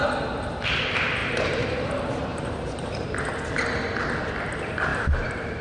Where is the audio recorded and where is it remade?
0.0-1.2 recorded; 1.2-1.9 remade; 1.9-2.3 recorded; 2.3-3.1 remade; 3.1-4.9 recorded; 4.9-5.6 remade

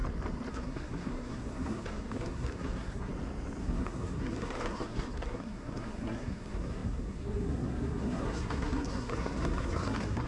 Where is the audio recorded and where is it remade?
0.0-0.5 recorded; 0.5-3.1 remade; 3.1-3.6 recorded; 3.6-10.3 remade